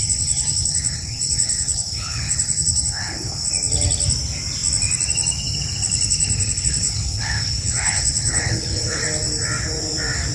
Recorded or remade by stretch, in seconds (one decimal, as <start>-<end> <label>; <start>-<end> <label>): 0.0-3.5 remade; 3.5-6.1 recorded; 6.1-9.0 remade; 9.0-10.3 recorded